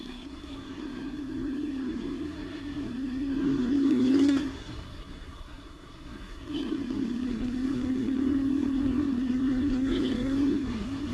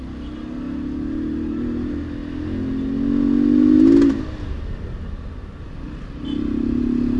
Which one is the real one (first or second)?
second